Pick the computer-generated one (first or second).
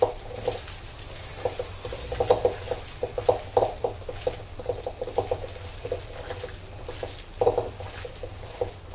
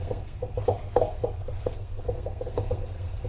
second